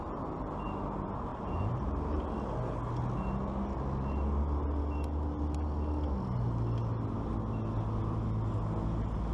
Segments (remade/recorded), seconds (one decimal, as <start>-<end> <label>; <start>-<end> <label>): 0.0-1.3 recorded; 1.3-2.2 remade; 2.2-9.3 recorded